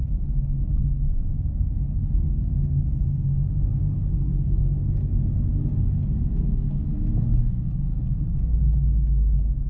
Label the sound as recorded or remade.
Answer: remade